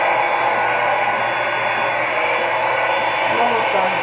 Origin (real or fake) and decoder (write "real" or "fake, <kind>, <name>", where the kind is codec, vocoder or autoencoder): real